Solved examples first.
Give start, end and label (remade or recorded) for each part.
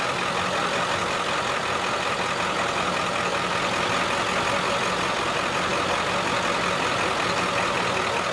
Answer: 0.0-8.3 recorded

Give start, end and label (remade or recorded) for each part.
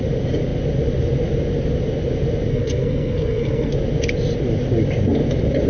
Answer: 0.0-2.5 recorded; 2.5-3.7 remade; 3.7-5.7 recorded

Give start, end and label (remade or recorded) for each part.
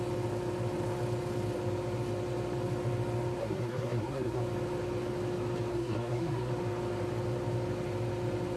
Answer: 0.0-3.4 recorded; 3.4-4.4 remade; 4.4-5.7 recorded; 5.7-6.5 remade; 6.5-8.6 recorded